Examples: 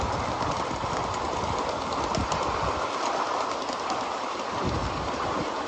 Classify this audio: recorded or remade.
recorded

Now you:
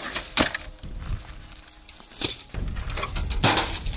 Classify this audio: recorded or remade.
recorded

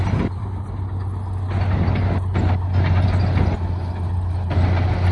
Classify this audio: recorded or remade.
recorded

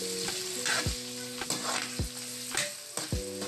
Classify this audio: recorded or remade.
recorded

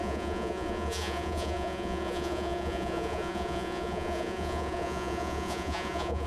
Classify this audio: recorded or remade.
remade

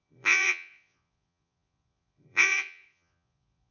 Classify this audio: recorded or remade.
remade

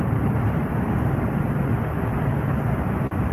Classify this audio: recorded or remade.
recorded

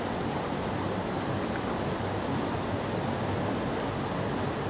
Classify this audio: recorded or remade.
recorded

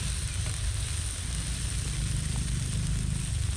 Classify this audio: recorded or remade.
recorded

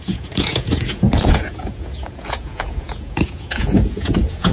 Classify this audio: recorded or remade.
remade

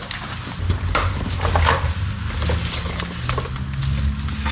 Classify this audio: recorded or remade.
recorded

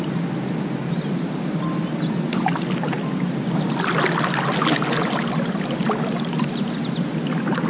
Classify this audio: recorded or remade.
recorded